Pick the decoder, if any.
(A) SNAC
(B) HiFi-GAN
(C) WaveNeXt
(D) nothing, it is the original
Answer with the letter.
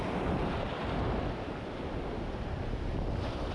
D